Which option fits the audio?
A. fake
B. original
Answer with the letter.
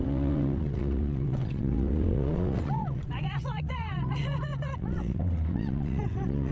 A